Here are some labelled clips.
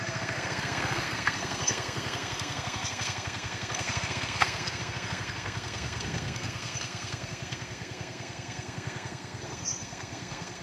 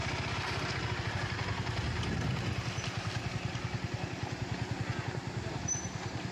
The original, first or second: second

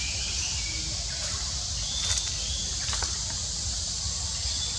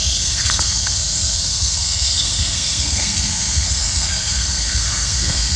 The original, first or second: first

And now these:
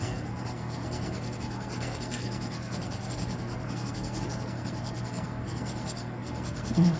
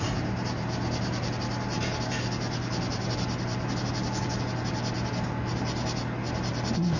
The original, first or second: second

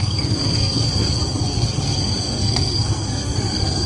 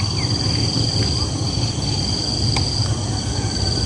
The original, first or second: second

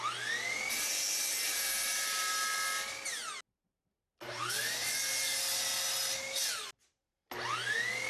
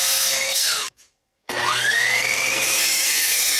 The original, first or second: first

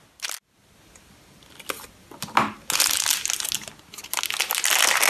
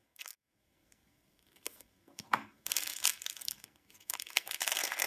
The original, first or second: first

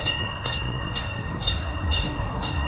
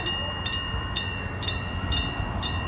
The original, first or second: second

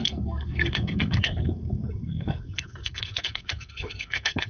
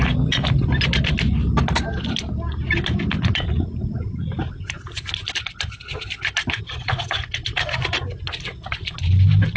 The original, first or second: second